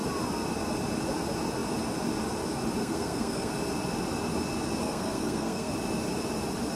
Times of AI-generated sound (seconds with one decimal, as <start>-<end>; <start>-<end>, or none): 2.8-3.5; 4.8-5.7